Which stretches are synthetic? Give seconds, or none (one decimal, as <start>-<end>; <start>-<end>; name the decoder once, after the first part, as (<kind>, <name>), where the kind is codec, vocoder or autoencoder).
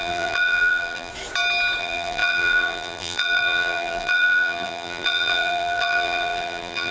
0.0-1.1 (vocoder, BigVGAN v2); 1.8-6.9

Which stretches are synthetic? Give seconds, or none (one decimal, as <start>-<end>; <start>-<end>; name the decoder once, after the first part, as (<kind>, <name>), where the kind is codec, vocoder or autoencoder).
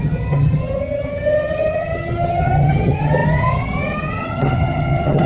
0.0-5.3 (vocoder, HiFi-GAN)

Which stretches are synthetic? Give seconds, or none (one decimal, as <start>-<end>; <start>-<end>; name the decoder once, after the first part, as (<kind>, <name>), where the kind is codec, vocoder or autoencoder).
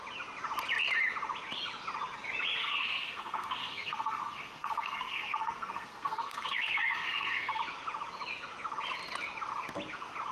2.6-7.6 (codec, SNAC)